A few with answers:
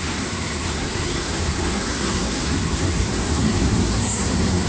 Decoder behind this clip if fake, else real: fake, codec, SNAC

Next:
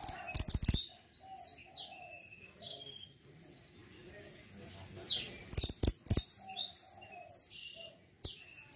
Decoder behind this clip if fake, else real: real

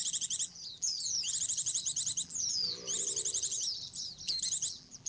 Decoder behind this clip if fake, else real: fake, vocoder, BigVGAN v2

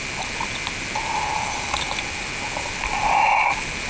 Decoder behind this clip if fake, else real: real